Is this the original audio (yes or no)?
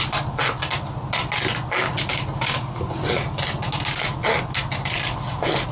yes